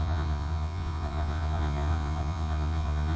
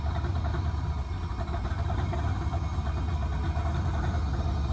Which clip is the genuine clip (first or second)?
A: second